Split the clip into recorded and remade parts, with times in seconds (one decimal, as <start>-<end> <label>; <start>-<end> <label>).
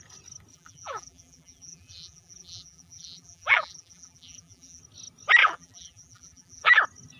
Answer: 0.0-0.5 recorded; 0.5-4.8 remade; 4.8-5.4 recorded; 5.4-6.8 remade; 6.8-7.2 recorded